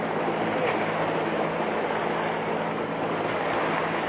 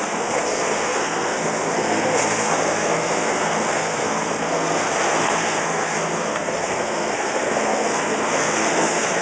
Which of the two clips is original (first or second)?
first